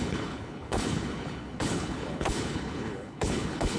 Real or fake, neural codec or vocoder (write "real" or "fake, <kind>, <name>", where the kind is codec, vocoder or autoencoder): fake, codec, HILCodec